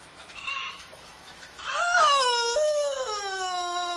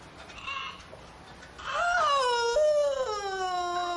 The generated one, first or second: first